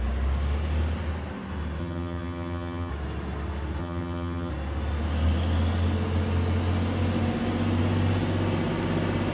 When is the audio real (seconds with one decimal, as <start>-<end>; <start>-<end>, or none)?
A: 0.0-1.8; 2.9-3.8; 4.5-9.3